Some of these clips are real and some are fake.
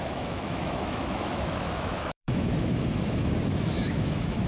fake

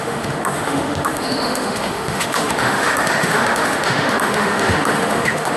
fake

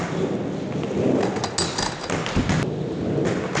real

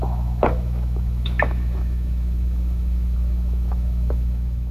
fake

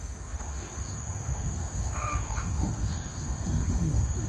fake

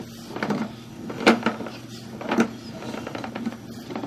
real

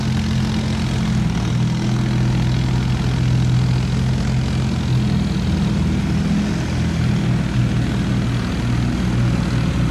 real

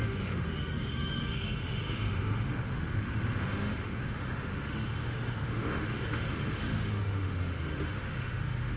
fake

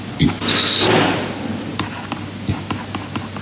real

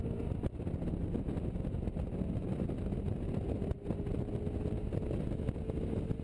real